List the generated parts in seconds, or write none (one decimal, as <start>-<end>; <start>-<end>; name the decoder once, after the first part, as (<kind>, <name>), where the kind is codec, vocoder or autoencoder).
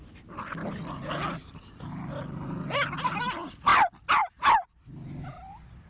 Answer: none